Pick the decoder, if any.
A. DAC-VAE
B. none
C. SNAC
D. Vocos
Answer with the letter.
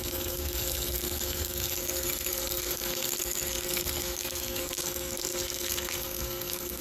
C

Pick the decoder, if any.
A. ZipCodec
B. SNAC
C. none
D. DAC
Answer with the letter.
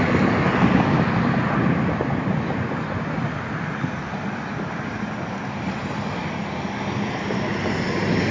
C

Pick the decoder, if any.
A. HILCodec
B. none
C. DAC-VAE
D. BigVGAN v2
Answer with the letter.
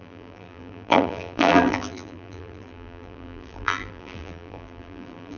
D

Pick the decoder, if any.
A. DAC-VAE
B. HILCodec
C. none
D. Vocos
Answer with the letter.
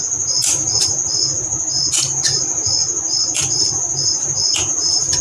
C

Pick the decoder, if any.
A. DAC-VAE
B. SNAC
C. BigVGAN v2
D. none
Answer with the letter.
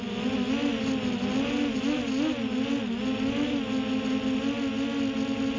D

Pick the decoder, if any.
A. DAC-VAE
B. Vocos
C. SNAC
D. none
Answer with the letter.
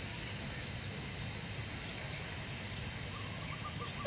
D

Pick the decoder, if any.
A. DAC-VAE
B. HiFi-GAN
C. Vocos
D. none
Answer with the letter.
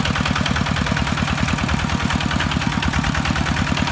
D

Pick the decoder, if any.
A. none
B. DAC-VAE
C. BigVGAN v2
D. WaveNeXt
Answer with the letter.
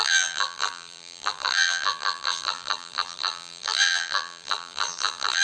C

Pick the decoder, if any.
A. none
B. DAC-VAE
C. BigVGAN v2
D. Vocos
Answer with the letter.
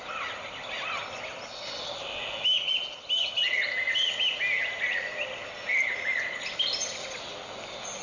A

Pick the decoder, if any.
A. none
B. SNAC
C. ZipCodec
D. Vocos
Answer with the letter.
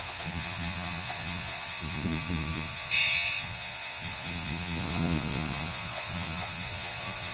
D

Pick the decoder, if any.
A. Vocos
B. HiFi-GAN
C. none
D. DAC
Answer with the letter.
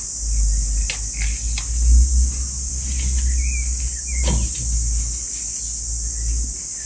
C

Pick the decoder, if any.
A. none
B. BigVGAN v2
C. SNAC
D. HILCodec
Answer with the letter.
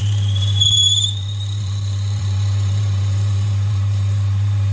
B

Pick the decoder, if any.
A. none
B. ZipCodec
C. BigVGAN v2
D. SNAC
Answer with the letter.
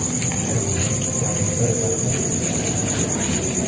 A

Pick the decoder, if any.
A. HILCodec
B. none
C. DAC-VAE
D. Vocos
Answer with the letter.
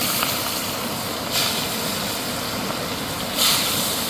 B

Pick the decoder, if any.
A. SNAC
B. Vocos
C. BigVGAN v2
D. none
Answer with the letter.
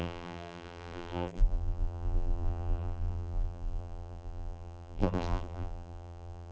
C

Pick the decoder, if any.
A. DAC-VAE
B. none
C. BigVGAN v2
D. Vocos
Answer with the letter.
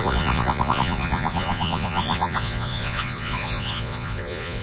D